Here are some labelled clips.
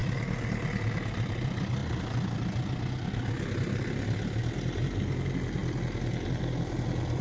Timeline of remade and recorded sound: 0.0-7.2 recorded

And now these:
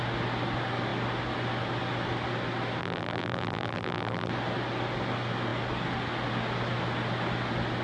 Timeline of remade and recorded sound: 0.0-2.8 recorded; 2.8-4.3 remade; 4.3-7.8 recorded